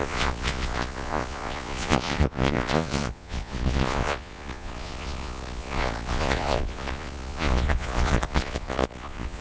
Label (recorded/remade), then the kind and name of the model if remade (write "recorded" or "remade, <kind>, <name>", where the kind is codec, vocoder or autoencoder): remade, vocoder, Vocos